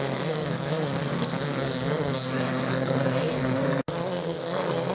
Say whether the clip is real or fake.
fake